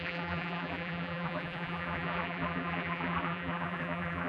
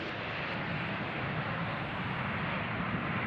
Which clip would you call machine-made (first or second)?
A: first